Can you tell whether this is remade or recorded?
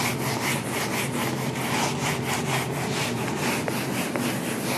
recorded